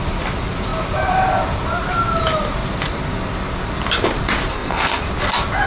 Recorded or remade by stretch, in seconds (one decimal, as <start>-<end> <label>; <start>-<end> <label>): 0.0-4.5 recorded; 4.5-5.0 remade; 5.0-5.7 recorded

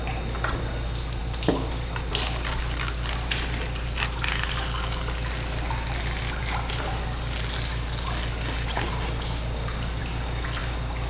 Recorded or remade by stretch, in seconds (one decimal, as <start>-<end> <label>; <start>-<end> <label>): 0.0-11.1 recorded

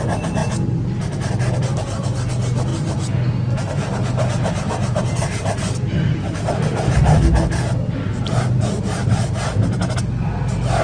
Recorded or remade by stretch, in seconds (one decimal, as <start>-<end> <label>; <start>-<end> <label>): 0.0-10.8 recorded